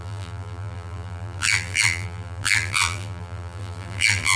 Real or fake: fake